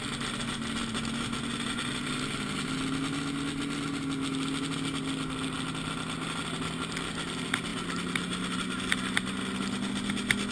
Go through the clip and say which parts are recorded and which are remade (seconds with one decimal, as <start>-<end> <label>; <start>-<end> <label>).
0.0-10.5 recorded